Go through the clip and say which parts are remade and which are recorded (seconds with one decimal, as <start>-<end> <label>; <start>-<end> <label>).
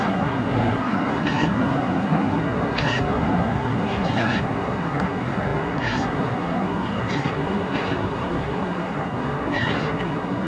0.0-10.5 remade